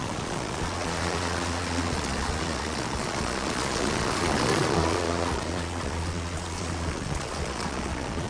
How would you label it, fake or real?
fake